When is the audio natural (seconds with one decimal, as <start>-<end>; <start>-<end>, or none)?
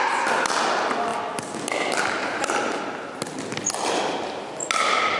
0.0-5.2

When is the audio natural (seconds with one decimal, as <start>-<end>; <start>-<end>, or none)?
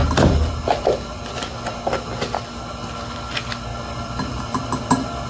2.0-3.7; 4.4-5.3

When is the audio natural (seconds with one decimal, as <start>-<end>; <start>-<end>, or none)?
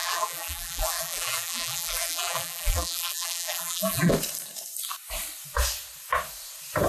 4.1-6.9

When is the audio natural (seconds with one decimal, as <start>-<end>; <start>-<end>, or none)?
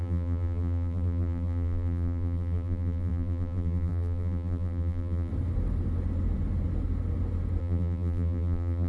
5.3-7.6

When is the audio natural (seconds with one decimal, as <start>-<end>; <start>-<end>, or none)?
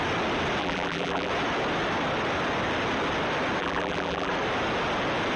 0.0-0.6; 1.3-3.6; 4.3-5.4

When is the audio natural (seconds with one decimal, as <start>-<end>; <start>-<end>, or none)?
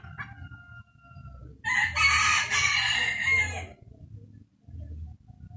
0.0-5.6